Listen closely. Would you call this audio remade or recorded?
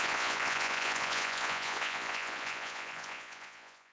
remade